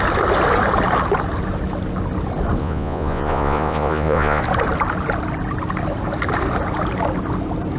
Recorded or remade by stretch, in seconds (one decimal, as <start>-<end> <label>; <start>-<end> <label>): 0.0-2.6 recorded; 2.6-4.4 remade; 4.4-7.8 recorded